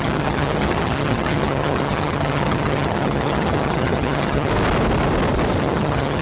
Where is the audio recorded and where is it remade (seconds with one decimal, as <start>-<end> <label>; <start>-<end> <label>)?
0.0-4.5 remade; 4.5-5.6 recorded; 5.6-6.2 remade